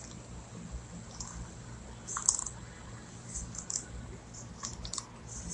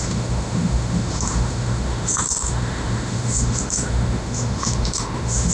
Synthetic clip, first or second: second